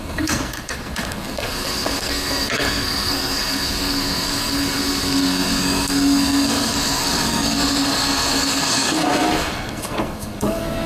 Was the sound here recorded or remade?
remade